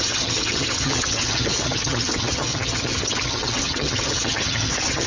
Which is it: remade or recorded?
remade